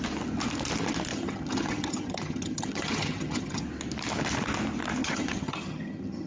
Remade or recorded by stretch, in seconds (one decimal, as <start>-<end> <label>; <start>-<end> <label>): 0.0-1.1 recorded; 1.1-3.6 remade; 3.6-5.0 recorded; 5.0-6.3 remade